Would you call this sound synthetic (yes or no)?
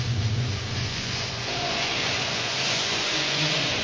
yes